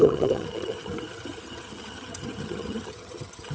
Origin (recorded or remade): remade